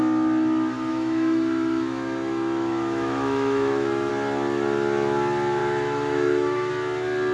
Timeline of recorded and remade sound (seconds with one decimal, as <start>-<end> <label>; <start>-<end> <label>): 0.0-0.9 recorded; 0.9-4.1 remade; 4.1-5.6 recorded; 5.6-6.7 remade; 6.7-7.3 recorded